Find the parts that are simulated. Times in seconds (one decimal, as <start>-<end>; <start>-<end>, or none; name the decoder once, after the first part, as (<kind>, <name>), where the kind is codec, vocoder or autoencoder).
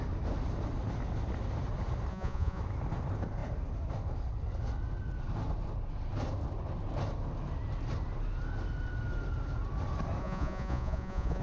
2.1-2.6 (vocoder, Vocos); 10.2-11.4